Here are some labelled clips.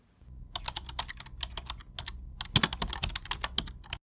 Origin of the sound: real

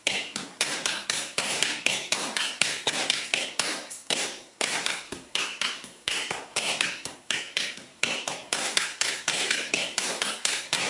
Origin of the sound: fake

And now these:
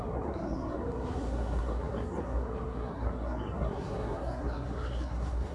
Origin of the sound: fake